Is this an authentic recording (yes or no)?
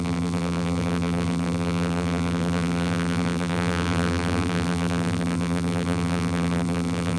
no